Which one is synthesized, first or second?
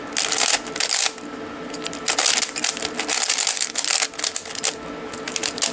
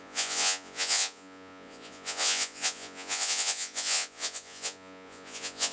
second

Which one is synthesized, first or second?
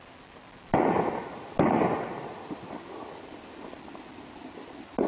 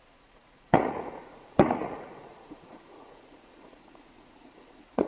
second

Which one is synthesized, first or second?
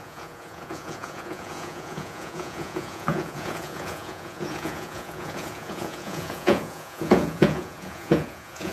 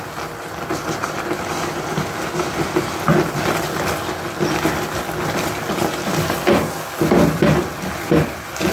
first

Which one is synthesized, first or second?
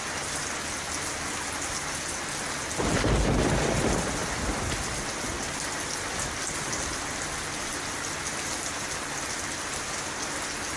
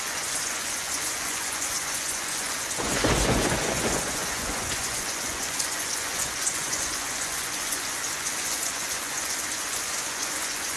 second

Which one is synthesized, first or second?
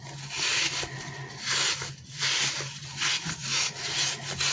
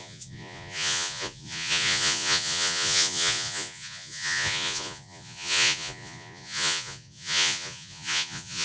second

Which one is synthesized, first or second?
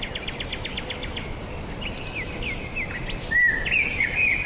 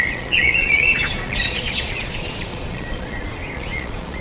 second